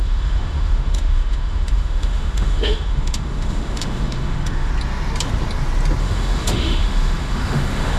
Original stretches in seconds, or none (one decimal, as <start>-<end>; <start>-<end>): 4.7-6.0